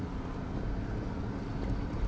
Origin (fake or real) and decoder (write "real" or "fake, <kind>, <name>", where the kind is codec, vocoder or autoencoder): real